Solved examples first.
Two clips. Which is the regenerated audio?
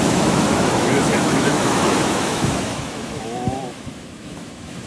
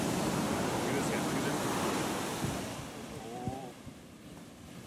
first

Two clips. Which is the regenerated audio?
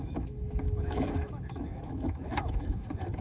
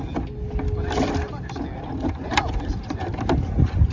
first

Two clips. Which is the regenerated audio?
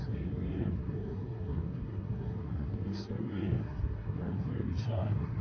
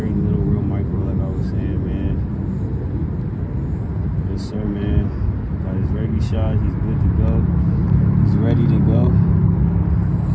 first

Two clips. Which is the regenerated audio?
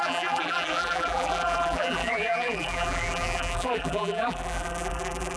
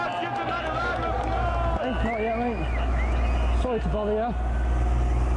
first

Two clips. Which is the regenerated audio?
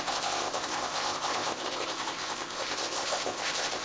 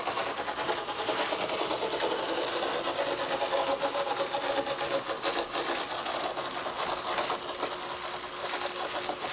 first